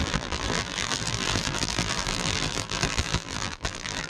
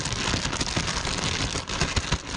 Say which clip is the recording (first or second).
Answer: second